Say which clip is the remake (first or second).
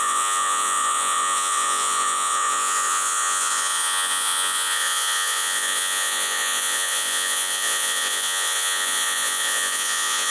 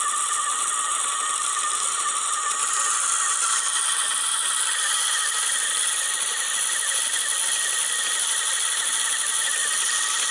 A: first